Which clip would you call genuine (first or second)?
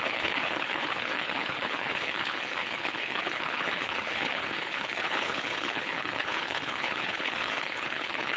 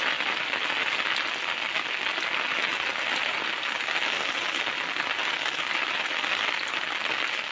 second